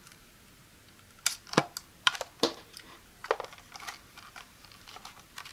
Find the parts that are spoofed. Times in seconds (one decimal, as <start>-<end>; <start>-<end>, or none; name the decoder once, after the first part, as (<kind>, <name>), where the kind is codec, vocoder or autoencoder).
0.0-0.6 (vocoder, BigVGAN v2); 1.8-3.2; 4.1-5.5